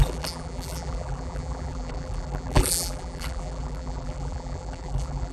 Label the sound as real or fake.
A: fake